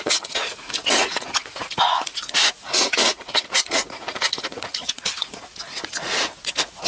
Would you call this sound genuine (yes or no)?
no